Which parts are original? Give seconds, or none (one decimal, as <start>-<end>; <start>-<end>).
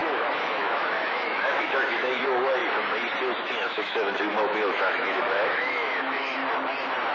2.6-3.4; 6.4-7.1